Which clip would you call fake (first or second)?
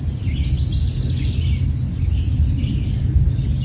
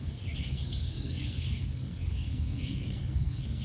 second